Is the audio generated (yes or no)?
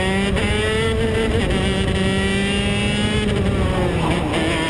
no